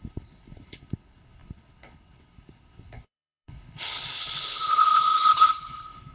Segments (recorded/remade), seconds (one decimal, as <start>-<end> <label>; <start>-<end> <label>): 0.0-6.1 remade